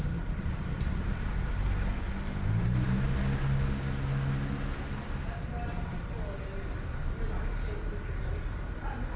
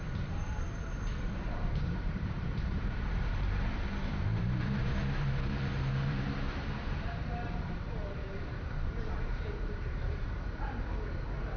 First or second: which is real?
first